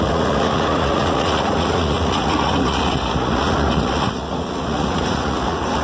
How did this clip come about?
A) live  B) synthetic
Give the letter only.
B